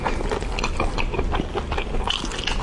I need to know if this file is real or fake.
real